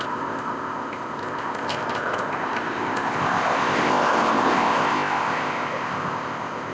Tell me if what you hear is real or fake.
fake